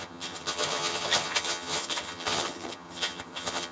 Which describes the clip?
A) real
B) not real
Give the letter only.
B